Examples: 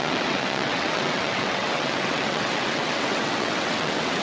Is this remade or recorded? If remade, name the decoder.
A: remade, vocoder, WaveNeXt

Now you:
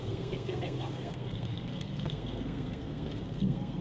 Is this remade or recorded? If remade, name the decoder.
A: remade, codec, SNAC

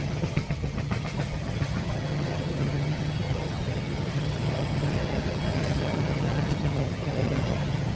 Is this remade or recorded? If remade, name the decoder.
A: remade, vocoder, HiFi-GAN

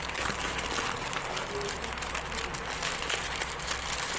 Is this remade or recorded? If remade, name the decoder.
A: recorded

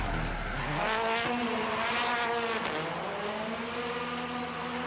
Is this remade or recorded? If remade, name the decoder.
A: recorded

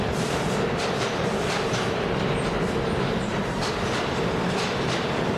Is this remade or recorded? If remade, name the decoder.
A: recorded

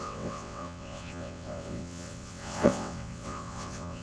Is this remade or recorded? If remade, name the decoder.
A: remade, vocoder, WaveNeXt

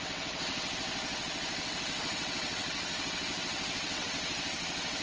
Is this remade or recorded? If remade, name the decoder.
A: remade, vocoder, WaveNeXt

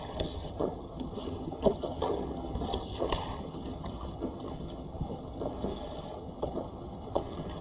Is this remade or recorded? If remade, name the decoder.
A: remade, vocoder, HiFi-GAN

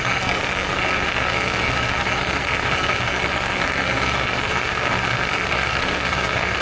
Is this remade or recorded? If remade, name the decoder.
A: remade, codec, SNAC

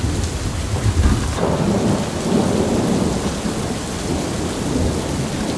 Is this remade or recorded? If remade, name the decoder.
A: recorded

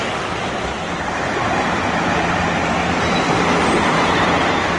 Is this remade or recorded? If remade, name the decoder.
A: recorded